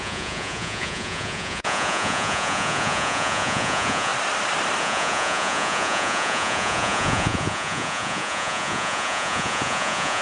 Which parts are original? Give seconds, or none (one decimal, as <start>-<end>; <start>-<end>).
4.1-4.8